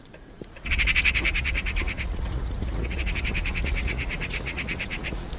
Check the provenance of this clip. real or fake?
fake